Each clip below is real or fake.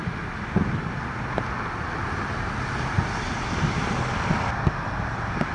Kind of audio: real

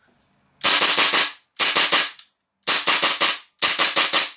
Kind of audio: real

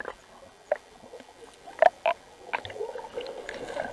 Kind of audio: real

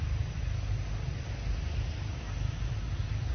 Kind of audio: real